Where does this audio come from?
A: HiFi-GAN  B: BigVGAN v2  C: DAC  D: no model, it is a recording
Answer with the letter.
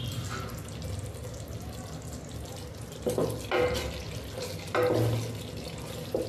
D